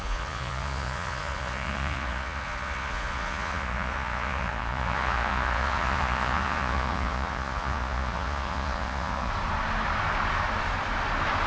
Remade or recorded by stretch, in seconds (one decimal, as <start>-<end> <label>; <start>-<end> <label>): 0.0-9.3 remade; 9.3-11.5 recorded